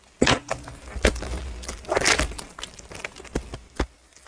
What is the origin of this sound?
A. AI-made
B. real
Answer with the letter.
B